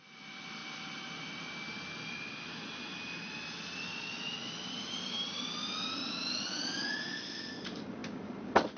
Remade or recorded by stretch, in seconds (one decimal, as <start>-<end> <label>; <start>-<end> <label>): 0.0-3.9 recorded; 3.9-4.5 remade; 4.5-6.0 recorded; 6.0-7.5 remade; 7.5-8.8 recorded